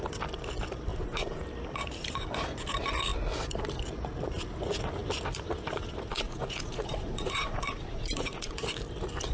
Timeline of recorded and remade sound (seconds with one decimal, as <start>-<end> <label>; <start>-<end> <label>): 0.0-0.9 recorded; 0.9-1.4 remade; 1.4-6.1 recorded; 6.1-8.5 remade; 8.5-9.3 recorded